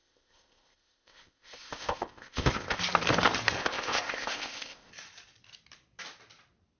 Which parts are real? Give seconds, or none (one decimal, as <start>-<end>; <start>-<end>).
2.8-3.6; 4.9-6.8